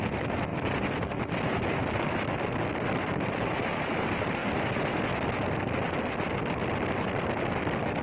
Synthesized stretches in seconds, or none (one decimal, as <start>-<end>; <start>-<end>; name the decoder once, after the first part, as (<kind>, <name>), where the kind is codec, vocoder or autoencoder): none